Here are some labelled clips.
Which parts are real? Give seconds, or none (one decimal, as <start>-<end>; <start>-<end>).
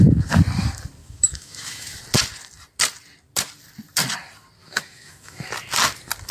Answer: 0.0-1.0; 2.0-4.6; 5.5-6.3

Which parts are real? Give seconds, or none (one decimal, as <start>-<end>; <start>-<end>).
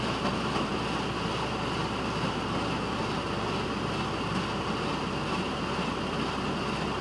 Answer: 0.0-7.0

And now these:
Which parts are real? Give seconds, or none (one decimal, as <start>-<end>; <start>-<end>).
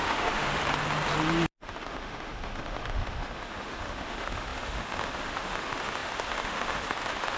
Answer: 0.5-1.5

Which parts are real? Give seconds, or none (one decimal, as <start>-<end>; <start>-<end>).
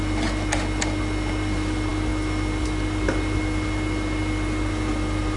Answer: 0.0-5.4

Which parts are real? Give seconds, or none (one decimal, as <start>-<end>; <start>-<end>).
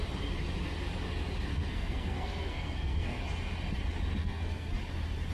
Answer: 0.0-1.5; 3.2-4.2; 4.7-5.3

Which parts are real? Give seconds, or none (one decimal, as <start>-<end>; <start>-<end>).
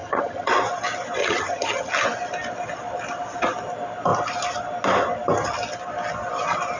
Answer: 0.5-1.2; 1.9-6.8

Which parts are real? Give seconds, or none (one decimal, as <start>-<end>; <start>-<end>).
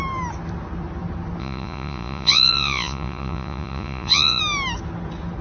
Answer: 0.0-1.4; 4.4-5.4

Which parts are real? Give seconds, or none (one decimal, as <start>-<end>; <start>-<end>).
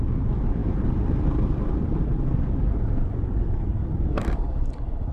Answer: 0.0-0.6; 2.9-3.7